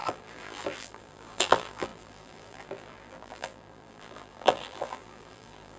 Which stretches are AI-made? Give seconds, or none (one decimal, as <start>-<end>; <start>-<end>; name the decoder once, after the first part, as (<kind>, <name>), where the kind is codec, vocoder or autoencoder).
0.0-5.8 (vocoder, BigVGAN v2)